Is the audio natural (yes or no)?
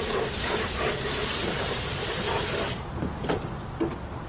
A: yes